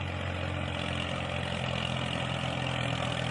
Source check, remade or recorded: recorded